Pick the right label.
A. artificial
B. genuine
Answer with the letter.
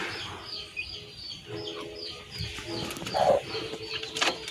A